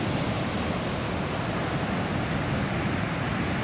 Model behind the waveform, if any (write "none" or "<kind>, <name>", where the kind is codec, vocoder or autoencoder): none